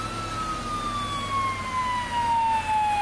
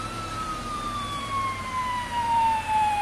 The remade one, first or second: second